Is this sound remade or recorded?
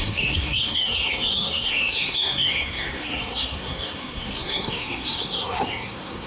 remade